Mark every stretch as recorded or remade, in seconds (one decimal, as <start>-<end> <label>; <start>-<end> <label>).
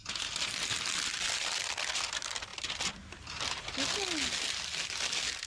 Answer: 0.0-5.5 recorded